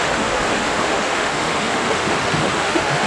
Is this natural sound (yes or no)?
no